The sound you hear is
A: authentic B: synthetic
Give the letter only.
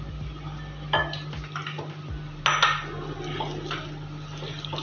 A